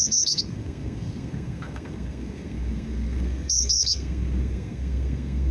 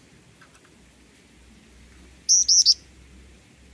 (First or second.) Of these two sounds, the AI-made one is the first